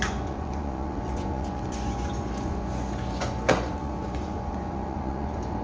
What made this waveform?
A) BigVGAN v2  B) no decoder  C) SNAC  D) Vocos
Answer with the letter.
D